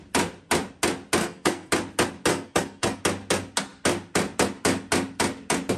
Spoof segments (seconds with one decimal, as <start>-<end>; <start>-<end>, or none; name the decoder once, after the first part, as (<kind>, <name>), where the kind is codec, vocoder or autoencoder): 1.2-1.7 (codec, SNAC); 2.3-3.0